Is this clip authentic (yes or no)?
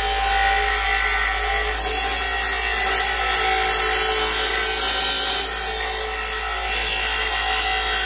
yes